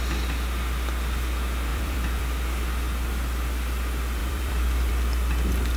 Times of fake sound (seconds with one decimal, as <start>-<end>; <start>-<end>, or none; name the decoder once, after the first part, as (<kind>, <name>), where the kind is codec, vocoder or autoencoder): 1.7-2.2 (vocoder, BigVGAN v2); 4.2-4.9